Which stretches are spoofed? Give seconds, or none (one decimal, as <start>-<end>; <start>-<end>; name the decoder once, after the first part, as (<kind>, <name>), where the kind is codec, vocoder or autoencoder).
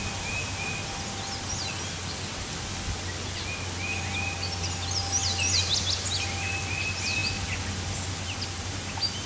none